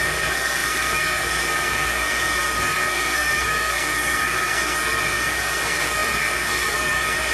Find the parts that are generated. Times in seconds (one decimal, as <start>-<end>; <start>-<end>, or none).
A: 0.0-7.3